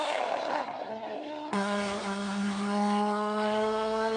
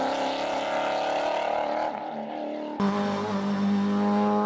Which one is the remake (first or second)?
first